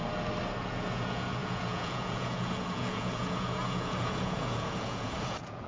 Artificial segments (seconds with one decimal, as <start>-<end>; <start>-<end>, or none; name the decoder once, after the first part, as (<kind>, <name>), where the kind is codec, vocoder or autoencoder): 0.6-5.7 (vocoder, Vocos)